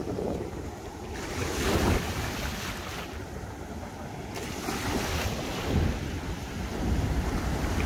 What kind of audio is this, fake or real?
real